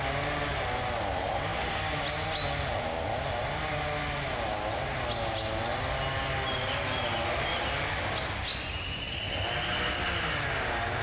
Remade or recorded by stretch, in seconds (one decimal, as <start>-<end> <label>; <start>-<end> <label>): 0.0-8.5 recorded; 8.5-9.0 remade; 9.0-11.0 recorded